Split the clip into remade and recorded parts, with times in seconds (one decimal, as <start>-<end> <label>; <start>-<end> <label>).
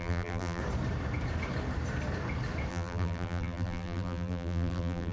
0.0-0.6 remade; 0.6-2.7 recorded; 2.7-5.1 remade